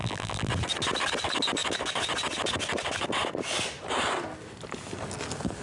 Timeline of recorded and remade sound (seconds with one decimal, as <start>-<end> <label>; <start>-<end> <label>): 0.0-0.5 remade; 0.5-5.6 recorded